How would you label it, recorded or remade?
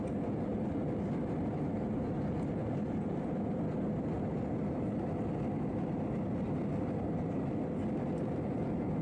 recorded